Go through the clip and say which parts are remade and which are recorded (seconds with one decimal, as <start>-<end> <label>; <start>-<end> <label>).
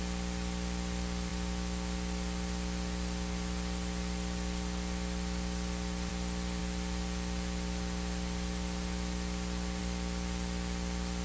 0.0-11.2 recorded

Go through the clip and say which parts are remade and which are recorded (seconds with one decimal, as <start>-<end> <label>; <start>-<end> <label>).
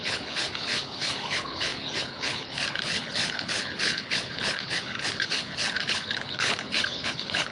0.0-7.5 remade